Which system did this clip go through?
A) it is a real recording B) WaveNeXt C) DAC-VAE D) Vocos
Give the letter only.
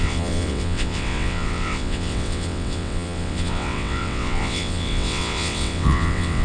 B